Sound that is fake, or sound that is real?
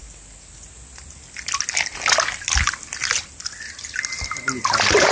real